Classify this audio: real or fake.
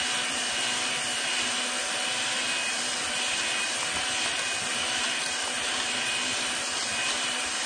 real